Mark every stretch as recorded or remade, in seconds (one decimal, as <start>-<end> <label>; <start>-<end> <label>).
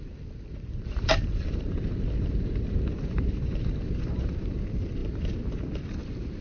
0.0-0.7 recorded; 0.7-4.5 remade; 4.5-6.4 recorded